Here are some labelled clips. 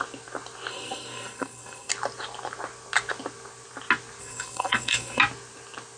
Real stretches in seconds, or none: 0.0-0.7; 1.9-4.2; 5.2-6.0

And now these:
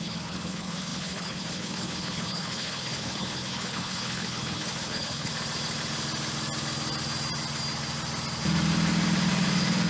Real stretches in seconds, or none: 5.3-9.9

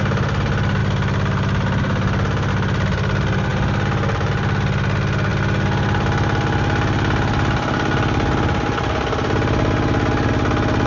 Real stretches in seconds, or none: 0.0-10.9